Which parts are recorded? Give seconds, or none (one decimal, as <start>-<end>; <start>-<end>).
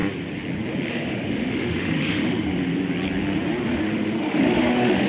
0.0-0.9; 2.7-3.7